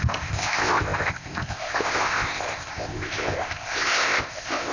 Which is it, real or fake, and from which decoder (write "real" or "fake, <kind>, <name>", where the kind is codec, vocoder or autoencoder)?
fake, codec, ZipCodec